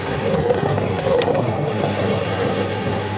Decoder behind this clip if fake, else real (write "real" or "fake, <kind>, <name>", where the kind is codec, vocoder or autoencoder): fake, codec, SNAC